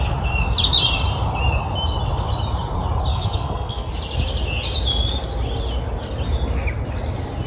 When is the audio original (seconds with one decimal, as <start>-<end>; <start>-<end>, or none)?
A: 0.0-3.1; 3.9-7.5